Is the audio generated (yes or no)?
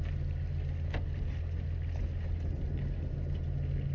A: no